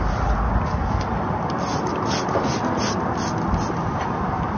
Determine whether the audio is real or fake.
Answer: real